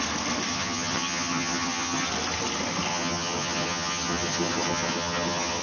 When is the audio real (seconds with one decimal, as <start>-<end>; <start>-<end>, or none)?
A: 0.0-0.5; 2.1-2.9